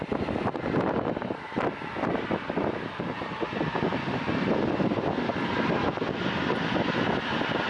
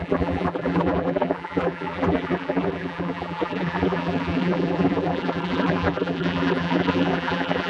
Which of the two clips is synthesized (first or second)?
second